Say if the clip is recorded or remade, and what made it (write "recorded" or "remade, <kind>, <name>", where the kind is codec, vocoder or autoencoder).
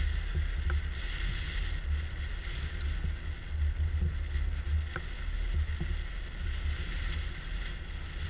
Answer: recorded